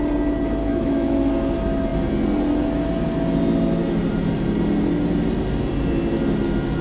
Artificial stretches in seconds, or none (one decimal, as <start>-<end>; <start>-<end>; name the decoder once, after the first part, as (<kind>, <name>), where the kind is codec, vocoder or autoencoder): 0.6-1.3 (autoencoder, DAC-VAE)